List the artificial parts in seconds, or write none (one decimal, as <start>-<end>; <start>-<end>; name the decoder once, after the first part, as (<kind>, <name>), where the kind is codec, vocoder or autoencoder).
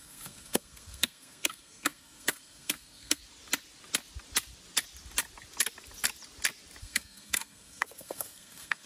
0.0-3.2 (codec, SNAC); 6.8-8.9